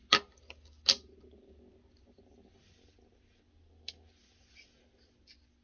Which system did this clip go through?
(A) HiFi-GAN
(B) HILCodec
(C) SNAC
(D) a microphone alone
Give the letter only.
D